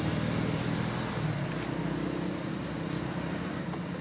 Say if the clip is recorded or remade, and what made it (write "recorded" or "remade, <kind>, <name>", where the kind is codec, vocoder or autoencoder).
recorded